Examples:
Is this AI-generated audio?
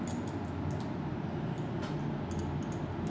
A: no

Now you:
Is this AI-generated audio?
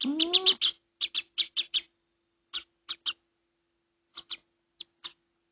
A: no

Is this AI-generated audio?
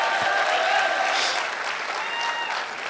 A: no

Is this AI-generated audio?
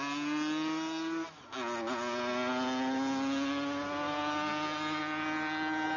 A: no